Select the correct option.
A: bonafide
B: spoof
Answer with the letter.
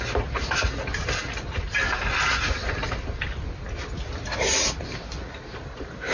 A